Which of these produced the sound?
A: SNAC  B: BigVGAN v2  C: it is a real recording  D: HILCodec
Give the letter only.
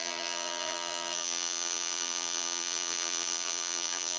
B